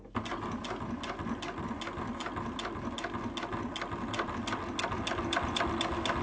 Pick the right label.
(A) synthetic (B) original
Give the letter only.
B